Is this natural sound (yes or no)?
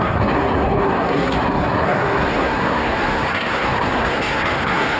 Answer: no